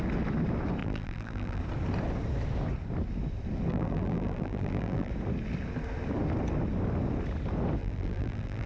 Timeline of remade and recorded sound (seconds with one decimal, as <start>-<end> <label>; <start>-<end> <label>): 0.0-0.8 recorded; 0.8-1.6 remade; 1.6-3.7 recorded; 3.7-5.1 remade; 5.1-7.8 recorded; 7.8-8.7 remade